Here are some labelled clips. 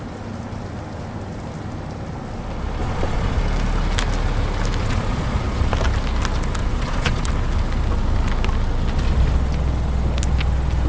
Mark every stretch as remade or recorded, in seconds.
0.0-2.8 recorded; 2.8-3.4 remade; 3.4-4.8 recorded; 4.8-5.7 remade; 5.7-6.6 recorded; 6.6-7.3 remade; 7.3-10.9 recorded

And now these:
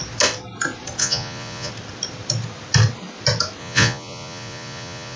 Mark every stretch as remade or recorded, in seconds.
0.0-1.0 recorded; 1.0-1.7 remade; 1.7-3.6 recorded; 3.6-5.2 remade

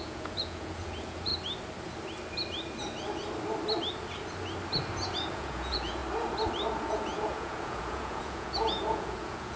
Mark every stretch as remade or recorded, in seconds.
0.0-1.3 remade; 1.3-5.3 recorded; 5.3-6.0 remade; 6.0-6.9 recorded; 6.9-9.6 remade

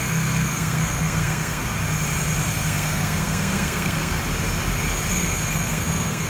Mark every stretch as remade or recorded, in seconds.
0.0-1.6 remade; 1.6-2.5 recorded; 2.5-4.2 remade; 4.2-5.1 recorded; 5.1-6.3 remade

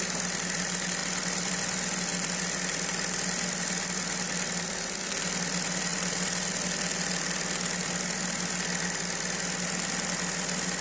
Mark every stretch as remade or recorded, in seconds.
0.0-10.8 recorded

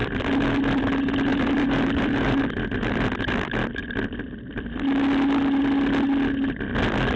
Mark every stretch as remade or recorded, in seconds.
0.0-1.3 recorded; 1.3-2.4 remade; 2.4-7.2 recorded